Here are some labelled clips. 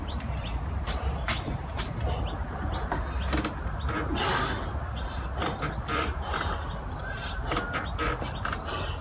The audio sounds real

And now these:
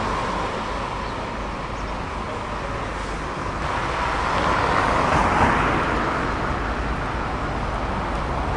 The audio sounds real